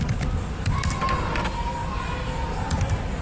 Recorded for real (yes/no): yes